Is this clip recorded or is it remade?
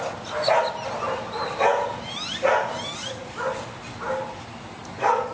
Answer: recorded